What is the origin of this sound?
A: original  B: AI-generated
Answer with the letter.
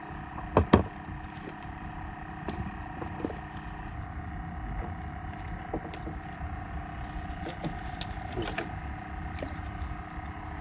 A